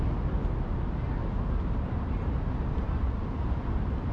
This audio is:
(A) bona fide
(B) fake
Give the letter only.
A